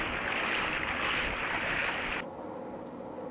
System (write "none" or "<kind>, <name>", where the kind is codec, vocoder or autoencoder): none